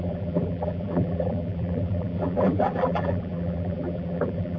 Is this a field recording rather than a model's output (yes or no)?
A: no